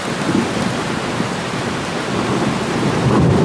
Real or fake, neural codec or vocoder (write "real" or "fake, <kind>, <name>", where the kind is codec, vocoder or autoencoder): real